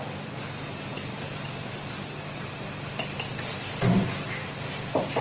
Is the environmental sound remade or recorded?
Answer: recorded